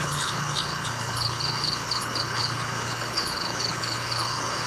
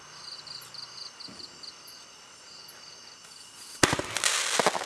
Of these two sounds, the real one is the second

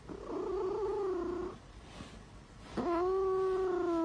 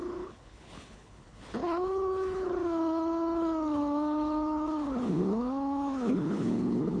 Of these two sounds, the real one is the first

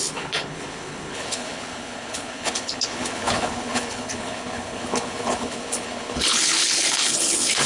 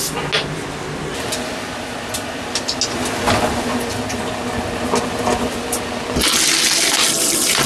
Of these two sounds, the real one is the second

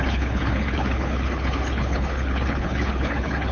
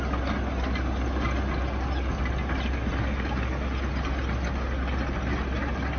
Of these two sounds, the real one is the second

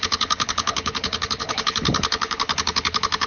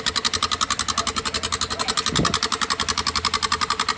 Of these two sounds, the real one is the second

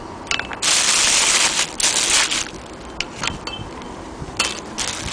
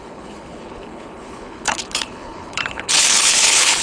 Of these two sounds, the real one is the first